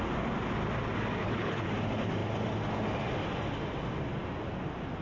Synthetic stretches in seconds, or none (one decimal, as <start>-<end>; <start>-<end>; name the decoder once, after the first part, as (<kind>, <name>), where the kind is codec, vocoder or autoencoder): 1.2-1.7 (codec, HILCodec)